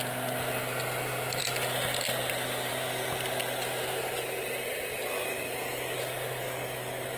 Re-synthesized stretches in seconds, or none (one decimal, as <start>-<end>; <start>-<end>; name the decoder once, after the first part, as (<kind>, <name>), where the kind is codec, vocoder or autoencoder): 5.3-6.0 (codec, DAC); 6.4-7.2